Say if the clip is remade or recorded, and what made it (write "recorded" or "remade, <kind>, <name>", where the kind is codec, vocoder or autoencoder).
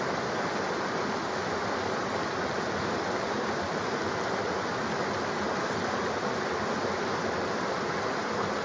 recorded